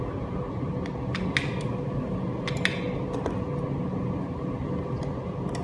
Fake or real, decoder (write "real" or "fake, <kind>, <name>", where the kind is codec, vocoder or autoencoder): real